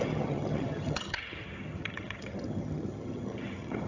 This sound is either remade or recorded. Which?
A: remade